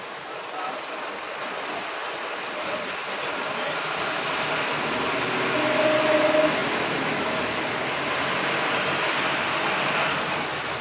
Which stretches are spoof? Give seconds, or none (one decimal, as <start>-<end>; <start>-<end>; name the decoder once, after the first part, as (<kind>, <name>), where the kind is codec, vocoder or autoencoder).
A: none